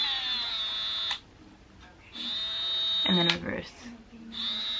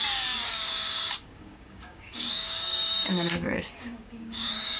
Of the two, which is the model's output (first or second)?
second